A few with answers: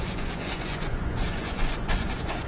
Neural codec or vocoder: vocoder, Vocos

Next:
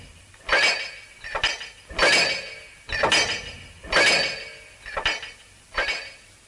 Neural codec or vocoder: none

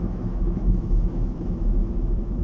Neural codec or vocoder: autoencoder, DAC-VAE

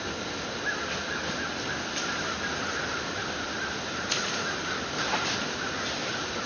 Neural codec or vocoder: none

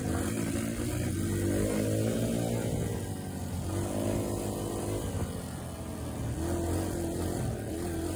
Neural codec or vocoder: none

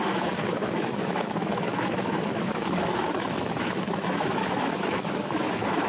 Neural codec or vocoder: autoencoder, DAC-VAE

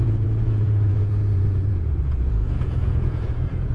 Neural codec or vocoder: vocoder, Vocos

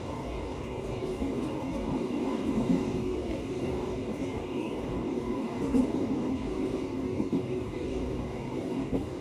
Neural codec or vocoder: codec, DAC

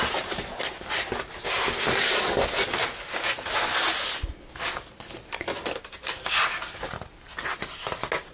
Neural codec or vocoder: none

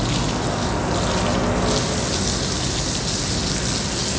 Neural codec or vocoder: none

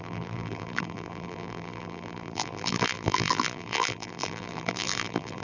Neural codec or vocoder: vocoder, BigVGAN v2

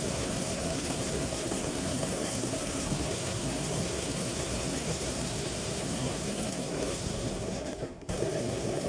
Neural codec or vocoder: codec, SNAC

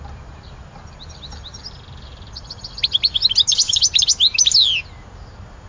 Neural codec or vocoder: none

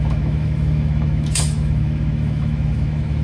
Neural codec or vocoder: autoencoder, DAC-VAE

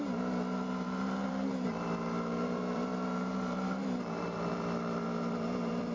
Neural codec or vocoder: vocoder, BigVGAN v2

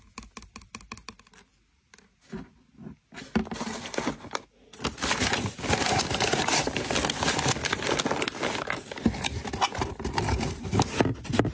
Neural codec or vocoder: none